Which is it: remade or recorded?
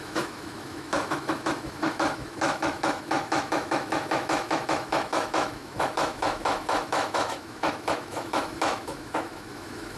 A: remade